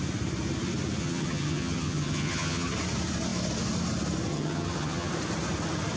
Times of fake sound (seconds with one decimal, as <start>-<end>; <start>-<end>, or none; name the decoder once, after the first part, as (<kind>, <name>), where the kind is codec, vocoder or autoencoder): 1.0-2.7 (vocoder, HiFi-GAN); 4.3-5.1